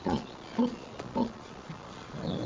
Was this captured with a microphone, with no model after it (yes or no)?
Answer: no